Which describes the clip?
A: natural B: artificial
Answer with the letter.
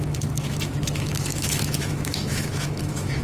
B